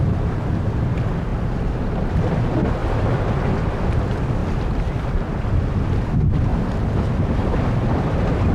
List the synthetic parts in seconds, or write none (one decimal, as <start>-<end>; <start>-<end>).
1.3-2.1; 2.8-4.0; 4.4-5.5